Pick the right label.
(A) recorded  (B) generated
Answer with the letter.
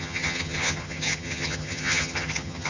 B